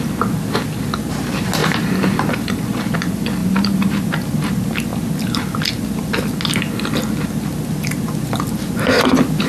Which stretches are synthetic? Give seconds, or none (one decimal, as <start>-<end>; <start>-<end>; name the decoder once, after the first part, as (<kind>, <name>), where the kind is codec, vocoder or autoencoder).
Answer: 1.6-2.8 (vocoder, BigVGAN v2); 3.4-4.0